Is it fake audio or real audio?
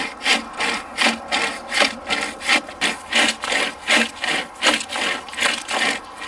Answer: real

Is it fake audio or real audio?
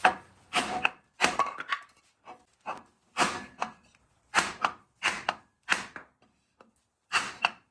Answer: real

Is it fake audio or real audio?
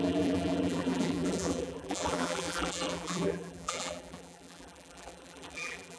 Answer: fake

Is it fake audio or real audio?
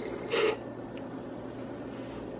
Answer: real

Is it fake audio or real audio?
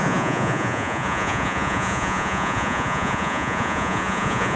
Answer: fake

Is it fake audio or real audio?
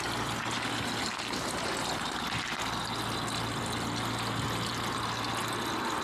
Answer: real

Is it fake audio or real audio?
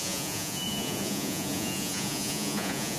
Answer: fake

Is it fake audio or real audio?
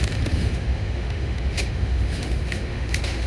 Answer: fake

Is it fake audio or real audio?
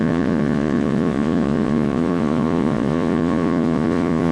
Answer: fake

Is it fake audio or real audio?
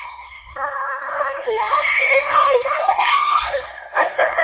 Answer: fake